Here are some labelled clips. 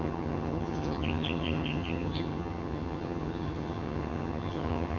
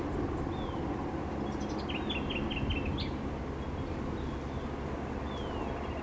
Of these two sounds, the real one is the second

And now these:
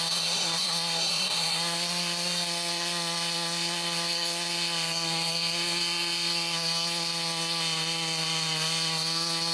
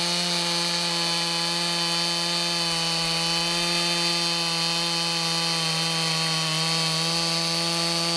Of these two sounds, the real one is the second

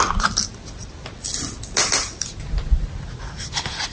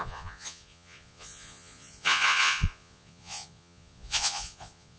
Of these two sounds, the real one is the first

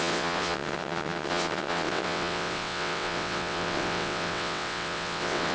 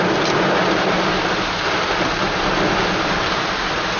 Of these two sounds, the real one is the second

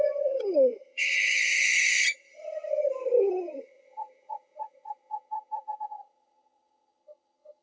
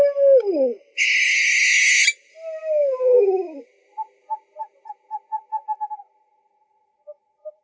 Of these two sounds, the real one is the second